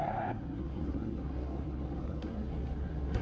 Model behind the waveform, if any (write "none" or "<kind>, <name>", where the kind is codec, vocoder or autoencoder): codec, SNAC